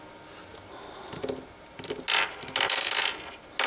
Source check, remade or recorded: recorded